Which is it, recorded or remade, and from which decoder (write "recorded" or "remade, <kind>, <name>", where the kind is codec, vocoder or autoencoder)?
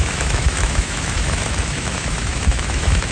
remade, autoencoder, DAC-VAE